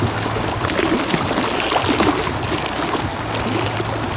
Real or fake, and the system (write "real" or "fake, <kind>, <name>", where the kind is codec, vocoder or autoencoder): real